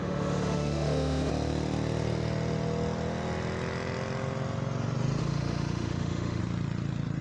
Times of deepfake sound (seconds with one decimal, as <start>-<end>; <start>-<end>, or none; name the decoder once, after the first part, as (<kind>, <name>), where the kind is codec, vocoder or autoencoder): 0.0-1.3 (autoencoder, DAC-VAE); 5.2-6.4